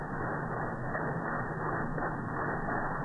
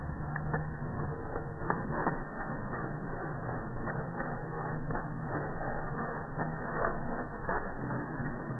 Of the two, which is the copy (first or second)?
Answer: second